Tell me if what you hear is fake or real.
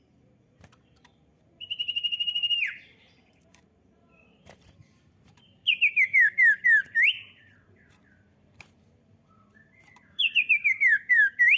fake